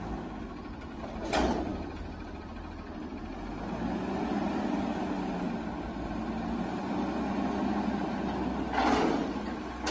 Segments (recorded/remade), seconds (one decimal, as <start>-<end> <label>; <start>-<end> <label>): 0.0-9.9 recorded